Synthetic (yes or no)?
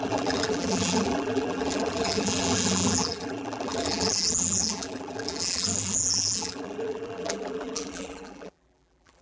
yes